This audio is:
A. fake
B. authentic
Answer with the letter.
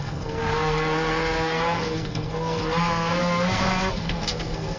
A